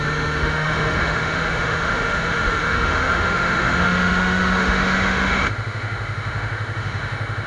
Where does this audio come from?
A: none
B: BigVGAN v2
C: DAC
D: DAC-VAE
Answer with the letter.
D